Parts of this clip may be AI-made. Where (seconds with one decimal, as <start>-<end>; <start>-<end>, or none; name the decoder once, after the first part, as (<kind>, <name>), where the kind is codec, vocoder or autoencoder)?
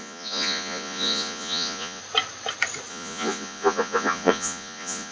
0.0-2.0 (vocoder, Vocos); 2.9-5.1